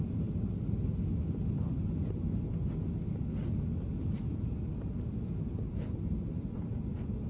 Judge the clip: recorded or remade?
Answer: recorded